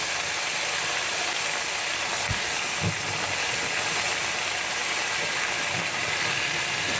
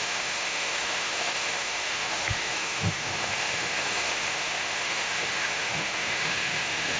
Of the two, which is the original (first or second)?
first